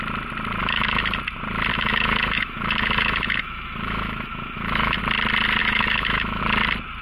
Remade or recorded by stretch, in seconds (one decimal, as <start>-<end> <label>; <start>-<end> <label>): 0.0-0.6 recorded; 0.6-1.2 remade; 1.2-1.7 recorded; 1.7-5.0 remade; 5.0-5.6 recorded; 5.6-6.4 remade; 6.4-7.0 recorded